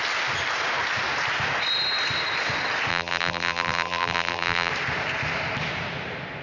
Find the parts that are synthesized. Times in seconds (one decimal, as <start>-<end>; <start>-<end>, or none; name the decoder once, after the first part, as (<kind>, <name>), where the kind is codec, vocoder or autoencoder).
2.9-4.7 (vocoder, BigVGAN v2)